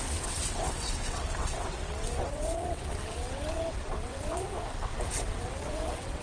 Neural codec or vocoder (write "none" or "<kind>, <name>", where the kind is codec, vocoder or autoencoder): vocoder, WaveNeXt